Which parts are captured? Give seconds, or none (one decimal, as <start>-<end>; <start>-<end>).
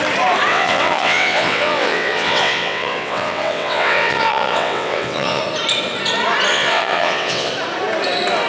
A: 0.0-0.5; 5.4-6.5; 7.5-8.5